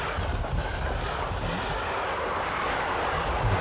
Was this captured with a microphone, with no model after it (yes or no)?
yes